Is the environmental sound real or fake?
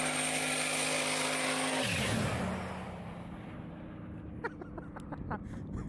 real